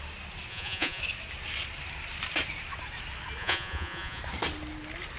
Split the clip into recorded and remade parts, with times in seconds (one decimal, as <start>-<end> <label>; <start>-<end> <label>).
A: 0.0-0.5 recorded; 0.5-1.0 remade; 1.0-3.4 recorded; 3.4-4.2 remade; 4.2-5.2 recorded